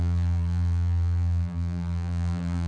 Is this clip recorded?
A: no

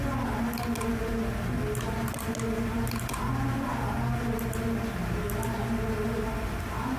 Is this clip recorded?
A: yes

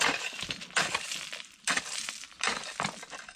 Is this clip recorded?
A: no